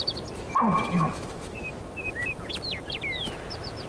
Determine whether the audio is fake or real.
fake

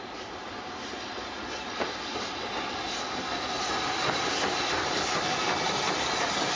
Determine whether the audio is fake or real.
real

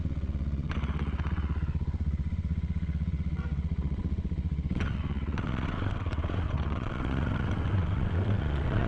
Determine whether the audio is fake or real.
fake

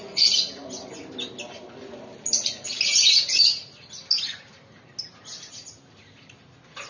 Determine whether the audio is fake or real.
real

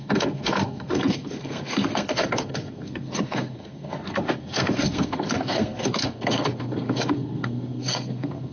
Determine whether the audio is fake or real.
fake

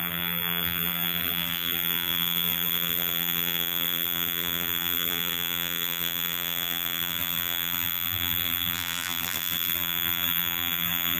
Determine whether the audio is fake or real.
fake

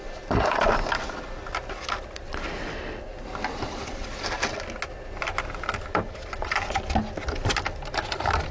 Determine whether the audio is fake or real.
real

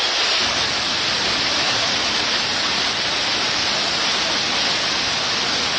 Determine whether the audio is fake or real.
real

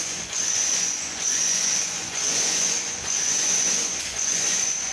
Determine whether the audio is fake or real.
fake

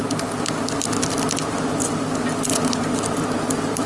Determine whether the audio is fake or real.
real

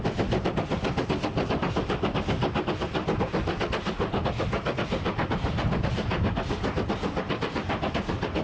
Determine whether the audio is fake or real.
real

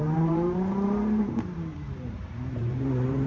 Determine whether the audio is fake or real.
fake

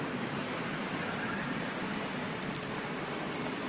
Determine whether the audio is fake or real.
fake